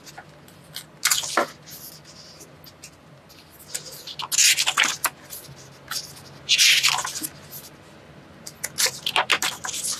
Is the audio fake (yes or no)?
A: no